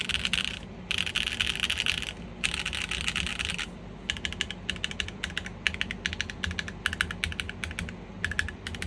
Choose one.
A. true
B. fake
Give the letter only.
A